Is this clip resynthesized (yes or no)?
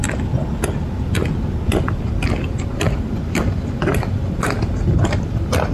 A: no